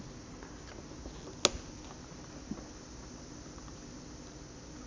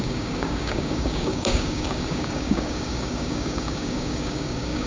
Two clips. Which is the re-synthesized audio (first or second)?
second